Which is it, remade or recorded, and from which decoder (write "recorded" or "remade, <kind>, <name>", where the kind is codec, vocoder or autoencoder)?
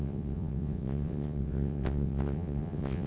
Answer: remade, vocoder, WaveNeXt